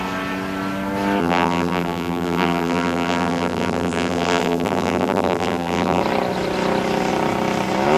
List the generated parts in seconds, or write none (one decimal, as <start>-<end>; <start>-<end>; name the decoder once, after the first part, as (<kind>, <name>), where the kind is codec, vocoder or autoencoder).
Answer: 1.2-6.0 (vocoder, BigVGAN v2)